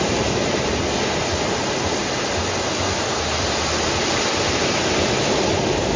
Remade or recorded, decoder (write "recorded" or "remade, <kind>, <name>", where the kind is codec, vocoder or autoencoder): recorded